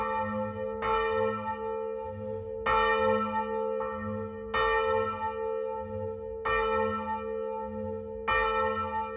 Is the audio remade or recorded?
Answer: recorded